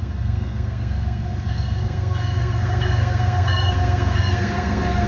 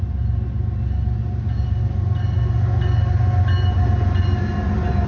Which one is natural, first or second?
second